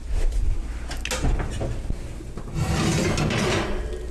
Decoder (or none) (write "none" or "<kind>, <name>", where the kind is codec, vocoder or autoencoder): none